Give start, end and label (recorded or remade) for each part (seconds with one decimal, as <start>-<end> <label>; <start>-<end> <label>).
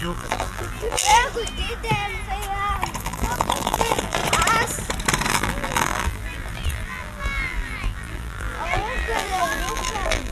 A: 0.0-1.1 remade; 1.1-3.0 recorded; 3.0-4.2 remade; 4.2-5.3 recorded; 5.3-10.3 remade